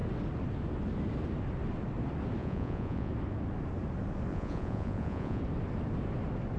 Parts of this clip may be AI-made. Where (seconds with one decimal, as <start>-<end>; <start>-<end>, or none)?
2.4-3.1; 4.3-5.4